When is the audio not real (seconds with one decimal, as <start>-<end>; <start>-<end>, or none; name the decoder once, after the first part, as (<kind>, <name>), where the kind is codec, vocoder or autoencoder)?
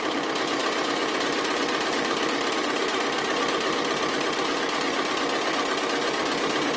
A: none